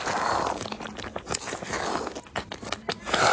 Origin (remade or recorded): recorded